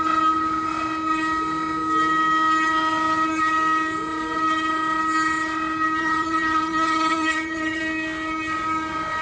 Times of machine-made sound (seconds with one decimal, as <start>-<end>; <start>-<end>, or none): 6.0-7.8